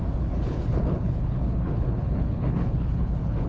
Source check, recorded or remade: remade